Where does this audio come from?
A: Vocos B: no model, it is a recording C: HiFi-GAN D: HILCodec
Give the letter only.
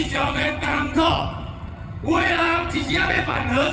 C